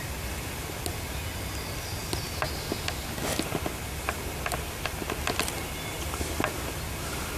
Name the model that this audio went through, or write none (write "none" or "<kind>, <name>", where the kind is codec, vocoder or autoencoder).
none